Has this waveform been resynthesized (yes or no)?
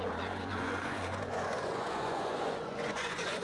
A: yes